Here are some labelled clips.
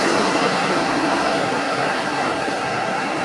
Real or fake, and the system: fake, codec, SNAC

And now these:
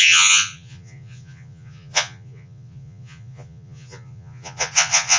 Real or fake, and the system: fake, vocoder, Vocos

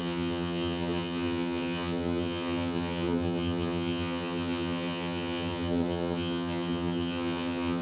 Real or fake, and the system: fake, vocoder, HiFi-GAN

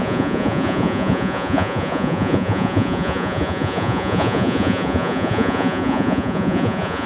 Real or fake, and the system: fake, vocoder, Vocos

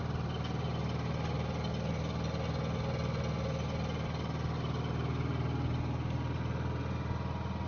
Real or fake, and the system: real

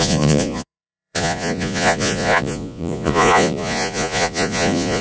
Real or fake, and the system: fake, vocoder, Vocos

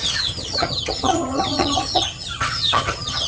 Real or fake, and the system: fake, vocoder, HiFi-GAN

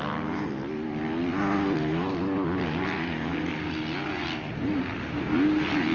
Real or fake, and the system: real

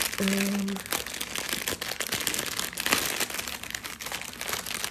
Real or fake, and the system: real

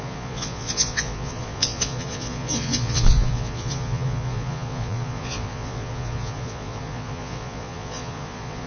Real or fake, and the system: fake, vocoder, Vocos